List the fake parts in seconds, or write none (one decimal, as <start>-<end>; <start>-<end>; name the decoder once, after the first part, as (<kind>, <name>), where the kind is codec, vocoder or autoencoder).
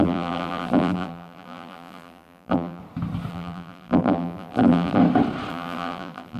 0.0-2.8 (vocoder, BigVGAN v2); 3.3-5.0; 5.5-6.4